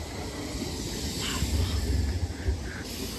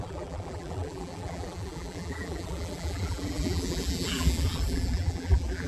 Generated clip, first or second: second